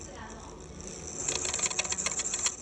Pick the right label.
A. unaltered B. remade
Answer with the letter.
A